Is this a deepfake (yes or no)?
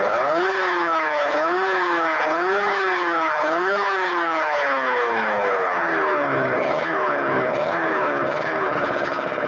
yes